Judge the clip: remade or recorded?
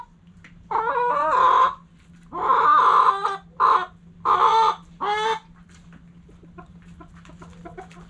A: recorded